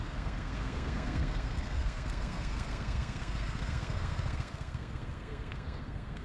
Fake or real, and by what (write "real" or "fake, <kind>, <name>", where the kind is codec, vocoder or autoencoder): fake, codec, SNAC